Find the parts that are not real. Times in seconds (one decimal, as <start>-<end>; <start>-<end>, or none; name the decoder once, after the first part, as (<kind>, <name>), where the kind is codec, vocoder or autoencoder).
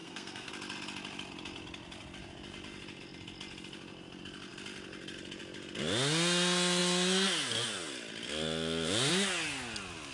0.0-0.5 (codec, SNAC)